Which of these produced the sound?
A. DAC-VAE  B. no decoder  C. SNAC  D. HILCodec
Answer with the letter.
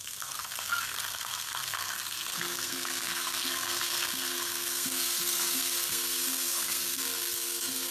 C